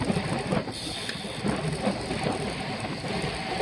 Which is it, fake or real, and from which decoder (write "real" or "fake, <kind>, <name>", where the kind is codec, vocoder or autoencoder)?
real